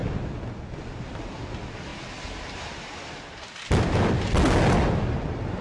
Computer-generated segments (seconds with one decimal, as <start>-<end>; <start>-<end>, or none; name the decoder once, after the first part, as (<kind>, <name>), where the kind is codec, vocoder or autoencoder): none